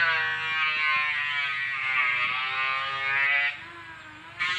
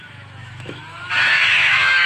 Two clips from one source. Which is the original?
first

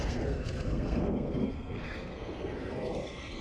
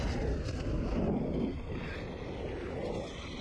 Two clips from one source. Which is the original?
second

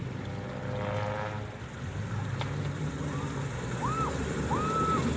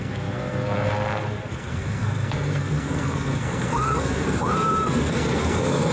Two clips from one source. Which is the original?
first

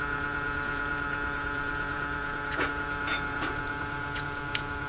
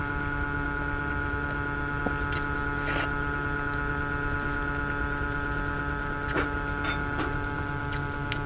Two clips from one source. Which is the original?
second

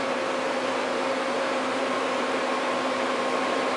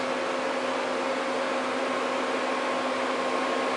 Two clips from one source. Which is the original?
second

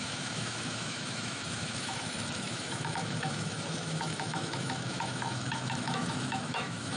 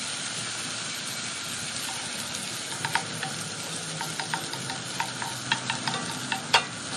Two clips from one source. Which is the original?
second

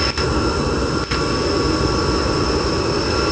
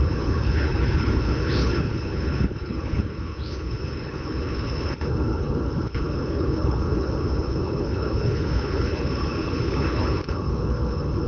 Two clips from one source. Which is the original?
first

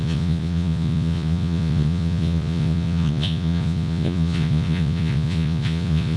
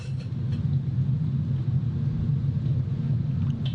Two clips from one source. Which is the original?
second